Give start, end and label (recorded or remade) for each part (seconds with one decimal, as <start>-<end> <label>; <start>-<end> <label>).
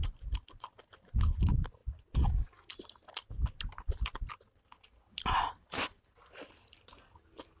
0.0-1.8 remade; 1.8-5.5 recorded; 5.5-7.6 remade